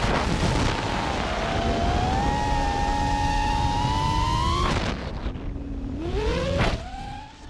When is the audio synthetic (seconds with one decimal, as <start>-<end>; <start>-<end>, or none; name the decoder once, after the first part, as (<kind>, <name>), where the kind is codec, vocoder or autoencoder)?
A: 6.3-7.5 (vocoder, WaveNeXt)